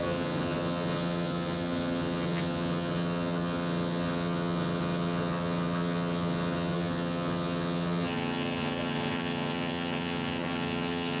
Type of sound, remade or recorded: remade